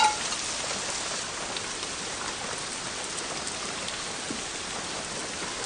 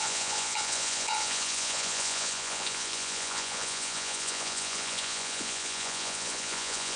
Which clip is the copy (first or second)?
second